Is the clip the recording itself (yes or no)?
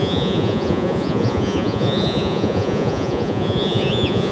no